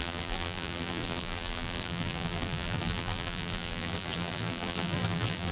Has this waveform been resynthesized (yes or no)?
yes